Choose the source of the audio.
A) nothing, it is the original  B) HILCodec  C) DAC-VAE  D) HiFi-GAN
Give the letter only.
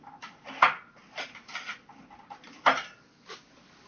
A